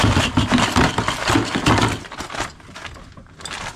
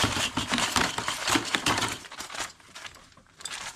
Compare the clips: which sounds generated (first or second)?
second